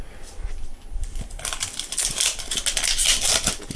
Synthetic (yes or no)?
no